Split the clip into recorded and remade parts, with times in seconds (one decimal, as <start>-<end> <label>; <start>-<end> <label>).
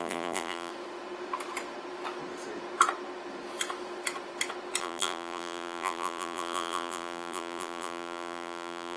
0.0-0.7 remade; 0.7-4.8 recorded; 4.8-9.0 remade